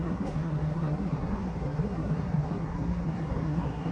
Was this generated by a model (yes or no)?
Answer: yes